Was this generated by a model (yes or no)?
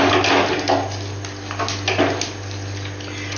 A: no